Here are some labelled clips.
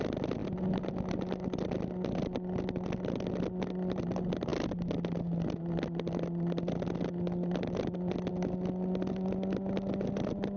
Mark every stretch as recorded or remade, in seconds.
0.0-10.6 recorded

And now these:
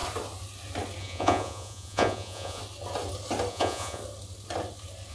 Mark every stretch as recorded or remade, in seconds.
0.0-1.0 recorded; 1.0-2.6 remade; 2.6-3.5 recorded; 3.5-4.0 remade; 4.0-5.1 recorded

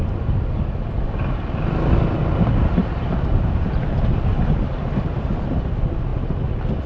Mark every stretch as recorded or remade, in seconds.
0.0-6.9 recorded

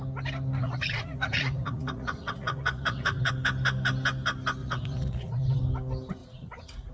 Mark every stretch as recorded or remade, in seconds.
0.0-0.6 recorded; 0.6-3.3 remade; 3.3-4.6 recorded; 4.6-5.6 remade; 5.6-6.2 recorded; 6.2-6.9 remade

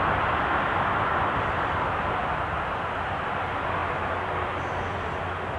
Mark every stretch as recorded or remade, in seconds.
0.0-5.6 recorded

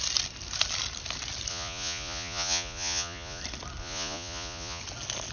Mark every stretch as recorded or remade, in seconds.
0.0-1.5 recorded; 1.5-3.4 remade; 3.4-3.8 recorded; 3.8-4.8 remade; 4.8-5.3 recorded

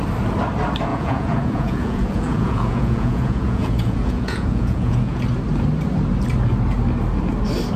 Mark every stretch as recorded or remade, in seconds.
0.0-0.9 recorded; 0.9-5.2 remade; 5.2-7.8 recorded